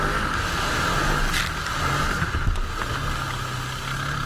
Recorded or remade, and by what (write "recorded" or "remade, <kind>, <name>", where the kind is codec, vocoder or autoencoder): recorded